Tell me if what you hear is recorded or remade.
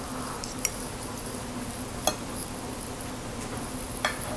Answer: recorded